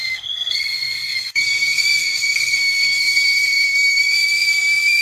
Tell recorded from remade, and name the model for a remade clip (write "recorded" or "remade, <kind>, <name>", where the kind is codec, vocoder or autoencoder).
remade, codec, SNAC